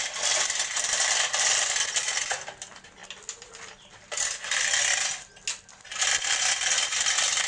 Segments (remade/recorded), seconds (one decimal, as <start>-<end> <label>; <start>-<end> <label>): 0.0-7.5 recorded

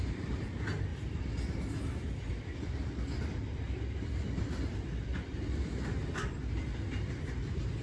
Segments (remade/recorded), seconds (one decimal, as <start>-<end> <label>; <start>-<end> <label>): 0.0-0.9 remade; 0.9-2.3 recorded; 2.3-7.8 remade

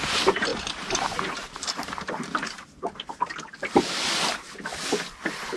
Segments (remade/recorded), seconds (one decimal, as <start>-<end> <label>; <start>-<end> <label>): 0.0-0.5 recorded; 0.5-3.3 remade; 3.3-5.6 recorded

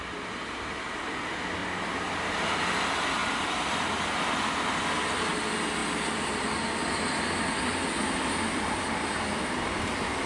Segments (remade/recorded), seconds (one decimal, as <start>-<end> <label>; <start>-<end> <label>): 0.0-1.6 recorded; 1.6-2.4 remade; 2.4-3.2 recorded; 3.2-4.8 remade; 4.8-10.3 recorded